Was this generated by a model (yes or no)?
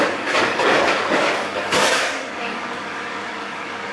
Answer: yes